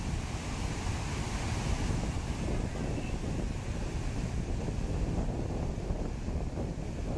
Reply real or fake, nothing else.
real